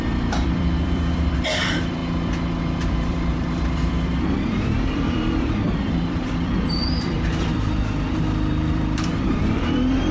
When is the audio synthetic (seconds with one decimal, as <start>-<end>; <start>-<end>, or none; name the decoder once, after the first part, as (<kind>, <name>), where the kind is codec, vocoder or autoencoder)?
0.0-10.1 (vocoder, BigVGAN v2)